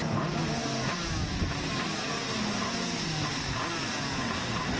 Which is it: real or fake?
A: real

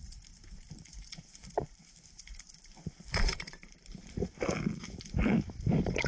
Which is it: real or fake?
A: fake